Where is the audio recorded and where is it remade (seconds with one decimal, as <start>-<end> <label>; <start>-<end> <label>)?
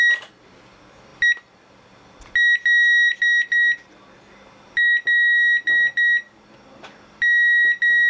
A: 0.0-8.1 recorded